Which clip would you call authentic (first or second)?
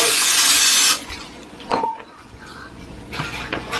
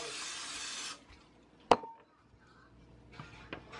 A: second